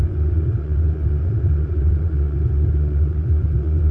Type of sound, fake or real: fake